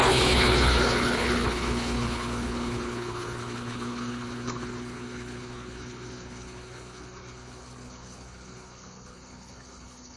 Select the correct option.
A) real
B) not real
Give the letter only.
B